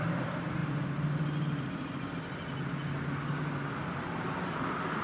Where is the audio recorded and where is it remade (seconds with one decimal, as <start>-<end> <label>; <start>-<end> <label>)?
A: 0.0-5.0 recorded